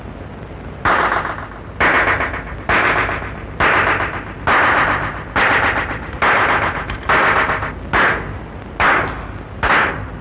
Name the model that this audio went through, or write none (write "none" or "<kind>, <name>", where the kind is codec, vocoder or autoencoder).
none